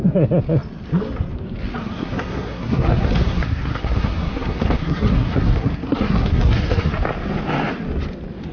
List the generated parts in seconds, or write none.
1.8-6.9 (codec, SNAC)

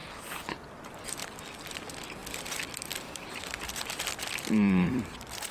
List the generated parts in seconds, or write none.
2.2-5.5 (vocoder, BigVGAN v2)

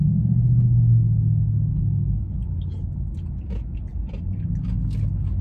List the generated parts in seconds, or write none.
none